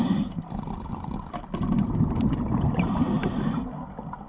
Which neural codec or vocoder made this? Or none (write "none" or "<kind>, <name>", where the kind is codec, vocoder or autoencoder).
none